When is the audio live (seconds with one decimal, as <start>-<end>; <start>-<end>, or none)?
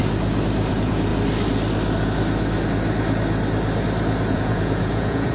0.0-0.7; 1.1-4.3